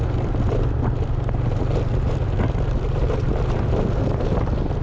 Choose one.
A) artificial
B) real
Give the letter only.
B